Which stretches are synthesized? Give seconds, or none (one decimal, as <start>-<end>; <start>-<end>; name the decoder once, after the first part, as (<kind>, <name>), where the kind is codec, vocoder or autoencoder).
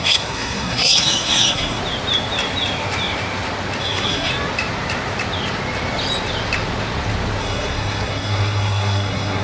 0.0-1.8 (codec, SNAC); 3.8-4.3; 7.4-9.4